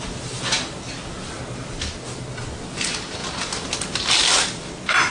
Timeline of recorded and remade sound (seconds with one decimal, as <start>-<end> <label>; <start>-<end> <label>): 0.0-5.1 recorded

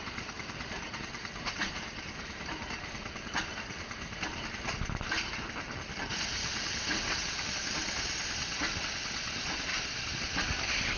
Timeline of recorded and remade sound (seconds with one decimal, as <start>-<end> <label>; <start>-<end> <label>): 0.0-0.9 recorded; 0.9-2.8 remade; 2.8-6.4 recorded; 6.4-7.5 remade; 7.5-11.0 recorded

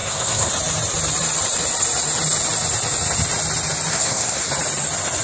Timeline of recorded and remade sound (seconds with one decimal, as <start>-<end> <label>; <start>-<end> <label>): 0.0-0.5 remade; 0.5-3.9 recorded; 3.9-4.5 remade; 4.5-5.2 recorded

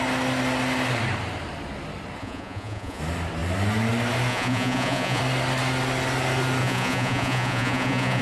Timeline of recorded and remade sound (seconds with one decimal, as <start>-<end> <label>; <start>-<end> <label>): 0.0-2.2 recorded; 2.2-3.0 remade; 3.0-4.3 recorded; 4.3-5.2 remade; 5.2-6.6 recorded; 6.6-8.2 remade

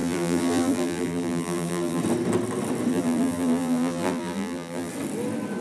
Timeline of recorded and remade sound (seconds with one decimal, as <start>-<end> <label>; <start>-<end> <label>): 0.0-2.0 remade; 2.0-2.9 recorded; 2.9-4.9 remade; 4.9-5.6 recorded

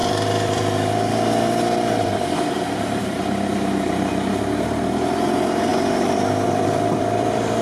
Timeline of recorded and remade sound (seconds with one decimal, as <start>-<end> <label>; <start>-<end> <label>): 0.0-7.6 remade

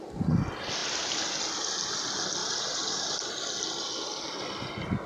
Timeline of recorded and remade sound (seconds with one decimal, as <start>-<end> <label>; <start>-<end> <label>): 0.0-2.4 recorded; 2.4-3.3 remade; 3.3-5.1 recorded

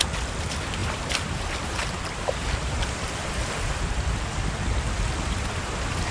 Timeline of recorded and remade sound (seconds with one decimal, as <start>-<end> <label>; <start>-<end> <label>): 0.0-0.8 recorded; 0.8-4.5 remade; 4.5-6.1 recorded